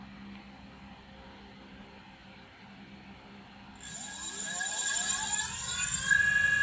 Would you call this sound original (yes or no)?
yes